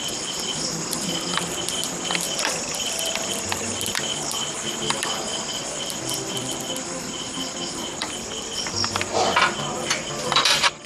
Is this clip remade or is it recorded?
remade